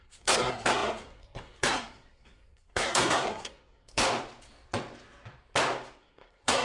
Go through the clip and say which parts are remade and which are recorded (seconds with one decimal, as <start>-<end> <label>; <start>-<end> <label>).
0.0-4.0 remade; 4.0-6.0 recorded; 6.0-6.6 remade